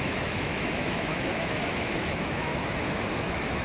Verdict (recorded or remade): remade